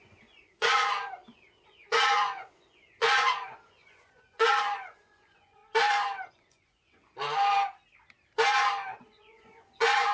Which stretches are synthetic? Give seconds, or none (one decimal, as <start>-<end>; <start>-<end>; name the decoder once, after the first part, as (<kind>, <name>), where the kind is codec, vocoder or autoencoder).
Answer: 0.0-5.6 (vocoder, Vocos); 6.3-7.1; 9.0-10.1